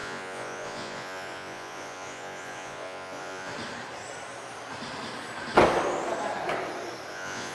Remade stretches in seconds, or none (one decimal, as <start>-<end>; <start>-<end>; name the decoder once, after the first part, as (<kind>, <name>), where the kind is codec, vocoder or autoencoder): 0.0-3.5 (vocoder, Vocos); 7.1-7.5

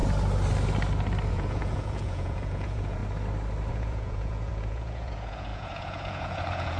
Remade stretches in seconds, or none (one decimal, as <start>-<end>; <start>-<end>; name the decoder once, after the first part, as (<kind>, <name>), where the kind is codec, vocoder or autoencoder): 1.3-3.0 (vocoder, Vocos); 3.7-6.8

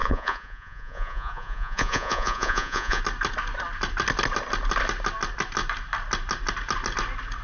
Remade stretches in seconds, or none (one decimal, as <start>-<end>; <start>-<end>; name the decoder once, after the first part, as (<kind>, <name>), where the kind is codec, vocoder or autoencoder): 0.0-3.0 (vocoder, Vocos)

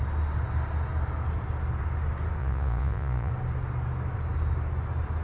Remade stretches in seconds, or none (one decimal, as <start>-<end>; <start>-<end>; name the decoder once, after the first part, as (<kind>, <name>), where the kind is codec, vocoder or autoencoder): 2.4-3.3 (vocoder, Vocos)

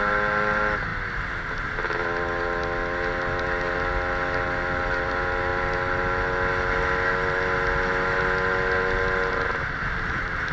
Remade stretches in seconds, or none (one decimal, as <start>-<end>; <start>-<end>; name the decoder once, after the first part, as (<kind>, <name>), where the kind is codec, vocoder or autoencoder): none

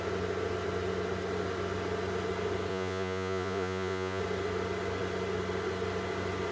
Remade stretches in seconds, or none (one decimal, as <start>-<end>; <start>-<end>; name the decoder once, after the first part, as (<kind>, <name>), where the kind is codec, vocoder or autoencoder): 2.7-4.2 (vocoder, Vocos)